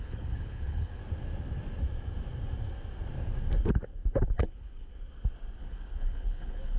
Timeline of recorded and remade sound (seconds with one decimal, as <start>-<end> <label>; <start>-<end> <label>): 0.0-1.0 remade; 1.0-4.3 recorded; 4.3-4.9 remade; 4.9-5.7 recorded; 5.7-6.8 remade